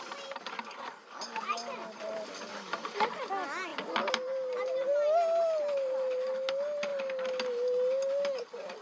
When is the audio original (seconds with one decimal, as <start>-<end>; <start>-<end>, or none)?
0.0-8.8